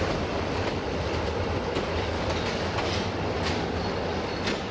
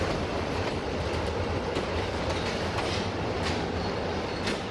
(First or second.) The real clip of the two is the first